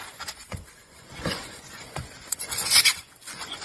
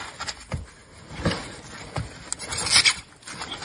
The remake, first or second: first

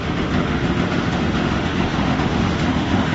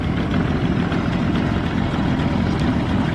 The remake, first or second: first